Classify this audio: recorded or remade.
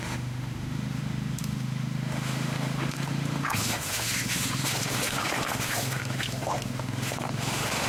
remade